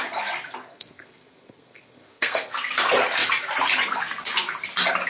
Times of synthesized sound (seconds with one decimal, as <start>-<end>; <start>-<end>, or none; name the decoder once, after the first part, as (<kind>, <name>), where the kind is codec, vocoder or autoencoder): 0.7-2.5 (codec, SNAC)

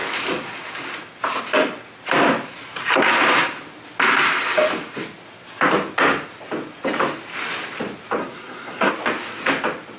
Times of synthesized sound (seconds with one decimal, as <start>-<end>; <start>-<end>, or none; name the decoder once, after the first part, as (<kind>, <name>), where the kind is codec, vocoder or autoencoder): 8.2-8.9 (codec, SNAC)